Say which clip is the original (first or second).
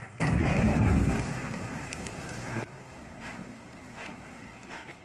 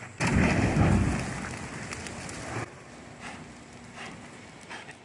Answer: second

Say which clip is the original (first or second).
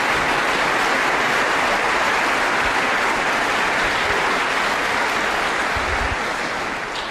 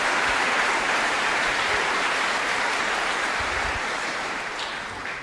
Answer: first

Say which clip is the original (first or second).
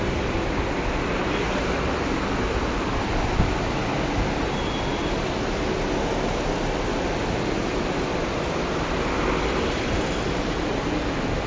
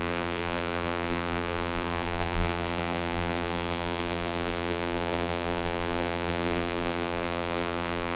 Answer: first